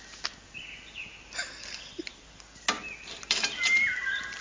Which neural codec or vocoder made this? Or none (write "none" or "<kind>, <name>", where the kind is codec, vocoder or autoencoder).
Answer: none